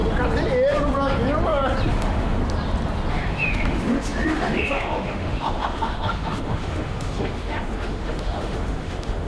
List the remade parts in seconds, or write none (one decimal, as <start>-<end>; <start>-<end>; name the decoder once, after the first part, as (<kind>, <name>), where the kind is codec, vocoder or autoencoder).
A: 1.9-2.4 (autoencoder, DAC-VAE); 3.1-9.3